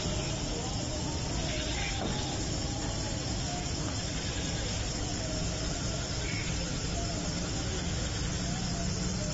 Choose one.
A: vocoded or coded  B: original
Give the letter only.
A